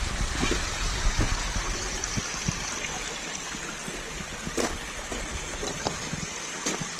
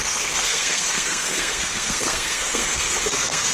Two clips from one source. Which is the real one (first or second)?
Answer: first